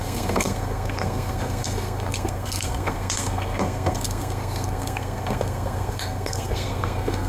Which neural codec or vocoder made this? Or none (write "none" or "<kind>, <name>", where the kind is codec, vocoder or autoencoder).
codec, SNAC